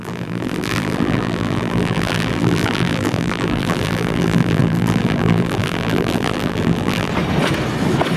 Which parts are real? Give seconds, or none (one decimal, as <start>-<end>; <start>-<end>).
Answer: 7.1-8.2

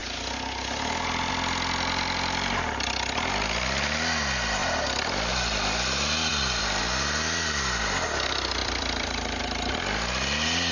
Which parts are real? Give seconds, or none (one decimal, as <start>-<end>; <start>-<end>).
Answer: 0.0-4.6; 5.3-6.3; 6.8-8.6; 9.4-10.7

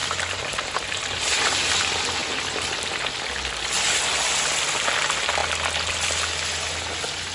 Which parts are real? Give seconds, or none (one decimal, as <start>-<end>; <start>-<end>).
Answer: 1.7-7.3